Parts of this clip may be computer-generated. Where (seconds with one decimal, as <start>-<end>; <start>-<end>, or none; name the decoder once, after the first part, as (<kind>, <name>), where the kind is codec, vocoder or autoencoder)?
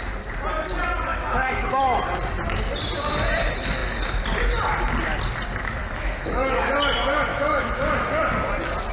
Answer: 1.1-1.8 (autoencoder, DAC-VAE); 5.8-6.7; 7.3-8.2